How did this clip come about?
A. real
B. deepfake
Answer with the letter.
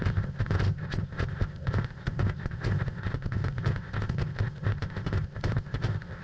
B